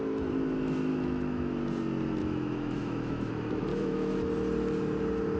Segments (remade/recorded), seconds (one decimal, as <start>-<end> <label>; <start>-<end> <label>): 0.0-0.9 recorded; 0.9-1.5 remade; 1.5-2.2 recorded; 2.2-3.3 remade; 3.3-3.7 recorded; 3.7-4.3 remade; 4.3-5.4 recorded